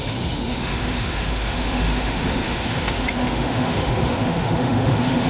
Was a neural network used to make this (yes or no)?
yes